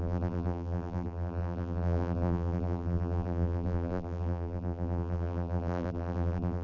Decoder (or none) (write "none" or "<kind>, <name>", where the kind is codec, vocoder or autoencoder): vocoder, BigVGAN v2